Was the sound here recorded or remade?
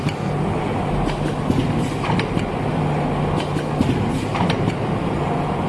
recorded